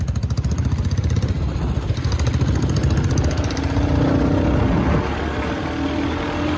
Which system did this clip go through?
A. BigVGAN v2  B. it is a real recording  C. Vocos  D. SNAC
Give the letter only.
B